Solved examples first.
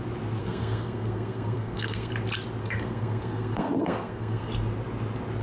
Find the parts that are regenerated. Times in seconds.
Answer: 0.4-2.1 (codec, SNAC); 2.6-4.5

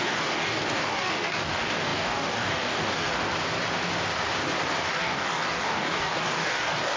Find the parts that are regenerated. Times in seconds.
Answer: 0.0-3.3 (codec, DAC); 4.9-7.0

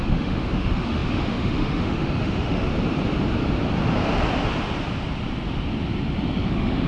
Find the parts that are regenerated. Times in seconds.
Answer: 0.0-2.7 (autoencoder, DAC-VAE); 6.5-6.9

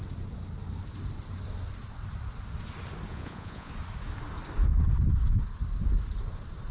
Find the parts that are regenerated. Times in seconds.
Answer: 3.1-3.7 (vocoder, Vocos)